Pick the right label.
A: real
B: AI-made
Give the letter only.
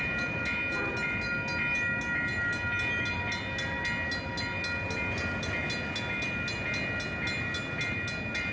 A